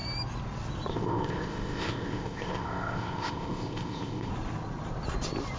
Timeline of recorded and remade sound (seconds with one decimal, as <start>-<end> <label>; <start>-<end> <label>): 0.0-0.9 recorded; 0.9-4.3 remade; 4.3-5.6 recorded